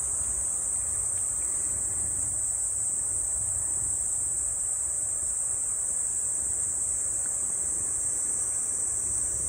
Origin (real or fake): fake